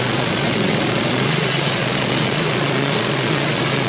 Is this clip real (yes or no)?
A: no